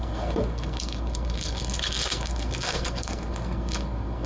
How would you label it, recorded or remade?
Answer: remade